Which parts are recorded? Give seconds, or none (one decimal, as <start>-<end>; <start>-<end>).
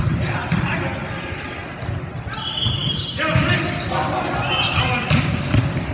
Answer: 0.0-5.9